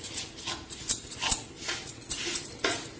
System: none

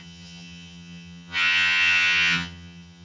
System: vocoder, HiFi-GAN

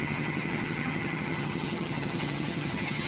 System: vocoder, HiFi-GAN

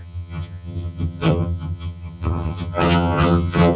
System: vocoder, HiFi-GAN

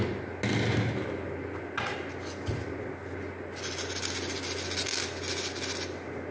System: none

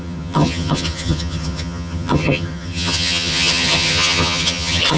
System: vocoder, HiFi-GAN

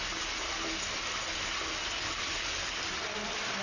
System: none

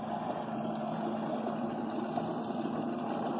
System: none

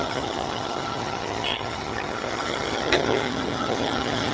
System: vocoder, HiFi-GAN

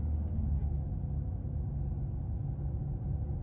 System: none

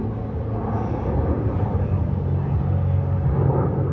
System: none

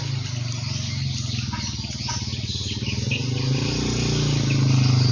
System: none